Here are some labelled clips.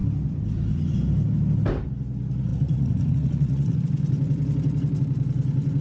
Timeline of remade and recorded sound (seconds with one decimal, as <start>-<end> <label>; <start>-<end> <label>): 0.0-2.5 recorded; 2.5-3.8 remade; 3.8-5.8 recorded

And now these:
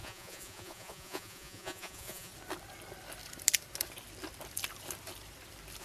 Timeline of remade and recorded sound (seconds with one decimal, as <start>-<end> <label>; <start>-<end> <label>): 0.0-2.3 remade; 2.3-5.8 recorded

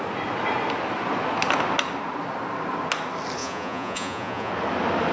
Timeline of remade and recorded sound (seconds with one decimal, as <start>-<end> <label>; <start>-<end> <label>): 0.0-3.4 recorded; 3.4-4.5 remade; 4.5-5.1 recorded